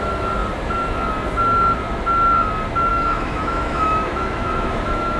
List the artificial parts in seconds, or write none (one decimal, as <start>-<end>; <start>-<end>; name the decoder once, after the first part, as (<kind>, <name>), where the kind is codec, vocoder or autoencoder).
2.9-5.2 (autoencoder, DAC-VAE)